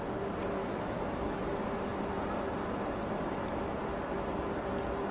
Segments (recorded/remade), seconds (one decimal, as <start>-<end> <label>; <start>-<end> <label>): 0.0-0.6 recorded; 0.6-1.4 remade; 1.4-5.1 recorded